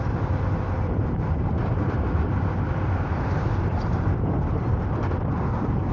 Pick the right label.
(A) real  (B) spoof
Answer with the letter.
A